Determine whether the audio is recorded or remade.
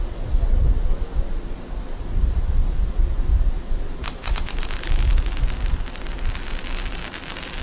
recorded